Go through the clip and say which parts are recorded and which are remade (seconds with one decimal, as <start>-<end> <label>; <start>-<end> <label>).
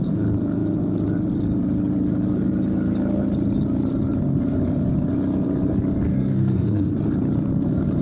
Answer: 0.0-6.1 recorded; 6.1-6.9 remade; 6.9-8.0 recorded